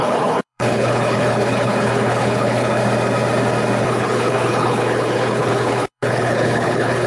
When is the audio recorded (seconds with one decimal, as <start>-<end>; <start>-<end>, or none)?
2.8-3.8